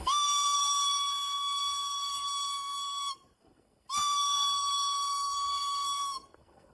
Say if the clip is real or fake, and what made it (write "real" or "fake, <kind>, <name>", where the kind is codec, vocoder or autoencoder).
fake, codec, SNAC